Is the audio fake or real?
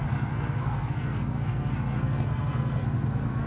fake